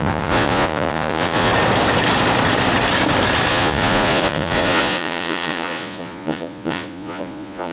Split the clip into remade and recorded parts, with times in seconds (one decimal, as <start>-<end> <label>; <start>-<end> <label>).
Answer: 0.0-1.5 remade; 1.5-3.5 recorded; 3.5-7.7 remade